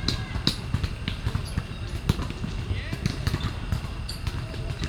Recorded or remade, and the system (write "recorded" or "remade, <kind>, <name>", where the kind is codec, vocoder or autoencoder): recorded